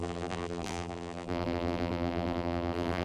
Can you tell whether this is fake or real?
fake